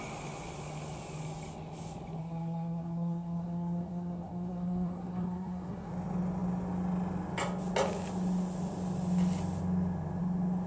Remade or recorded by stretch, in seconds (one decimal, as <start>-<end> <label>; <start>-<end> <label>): 0.0-2.2 recorded; 2.2-5.9 remade; 5.9-10.7 recorded